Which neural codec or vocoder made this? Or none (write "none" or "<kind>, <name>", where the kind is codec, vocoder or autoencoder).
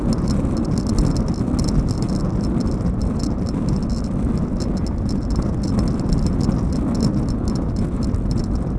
none